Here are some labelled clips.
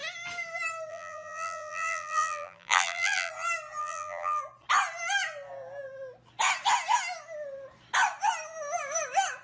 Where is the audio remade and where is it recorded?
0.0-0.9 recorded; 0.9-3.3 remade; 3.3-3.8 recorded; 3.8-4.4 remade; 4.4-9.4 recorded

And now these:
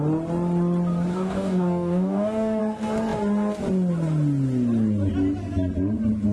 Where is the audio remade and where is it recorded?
0.0-1.1 recorded; 1.1-2.6 remade; 2.6-6.3 recorded

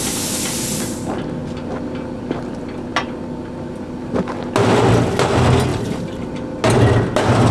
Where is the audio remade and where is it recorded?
0.0-2.9 recorded; 2.9-4.2 remade; 4.2-5.7 recorded; 5.7-6.3 remade; 6.3-7.5 recorded